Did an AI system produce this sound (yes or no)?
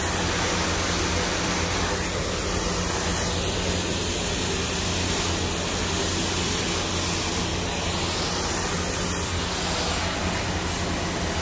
no